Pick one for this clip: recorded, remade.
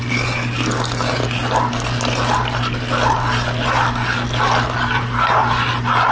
recorded